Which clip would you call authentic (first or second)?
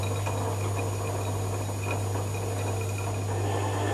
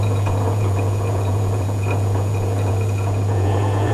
first